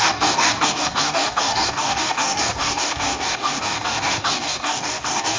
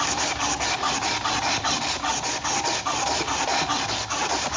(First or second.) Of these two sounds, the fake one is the first